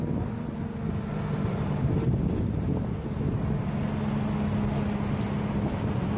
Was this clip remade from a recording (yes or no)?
no